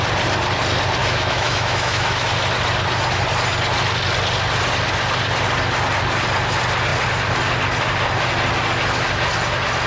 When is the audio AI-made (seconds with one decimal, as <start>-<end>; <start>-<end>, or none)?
1.0-2.3